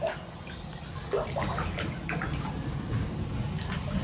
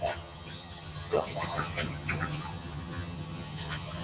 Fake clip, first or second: second